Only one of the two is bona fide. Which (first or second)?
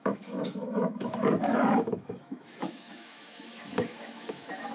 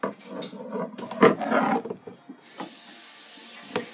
second